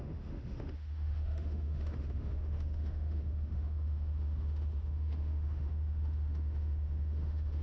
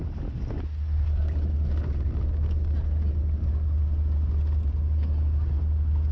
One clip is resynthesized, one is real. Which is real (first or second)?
second